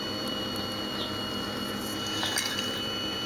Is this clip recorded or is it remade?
remade